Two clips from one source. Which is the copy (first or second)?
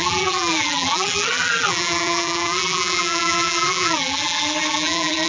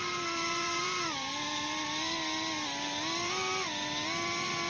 first